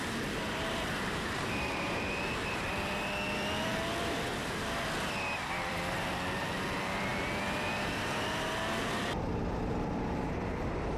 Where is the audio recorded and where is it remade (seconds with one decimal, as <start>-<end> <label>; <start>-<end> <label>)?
0.0-11.0 remade